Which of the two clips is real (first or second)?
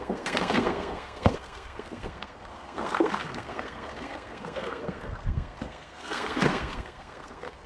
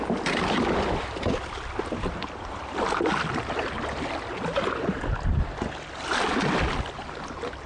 second